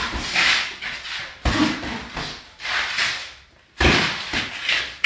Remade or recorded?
recorded